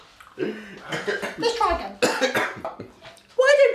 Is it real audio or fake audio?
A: real